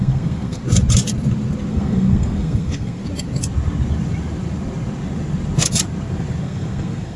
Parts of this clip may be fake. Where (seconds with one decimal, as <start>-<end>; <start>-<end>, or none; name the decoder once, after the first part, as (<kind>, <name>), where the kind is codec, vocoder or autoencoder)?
0.0-0.6 (codec, SNAC); 1.7-3.0; 6.4-7.2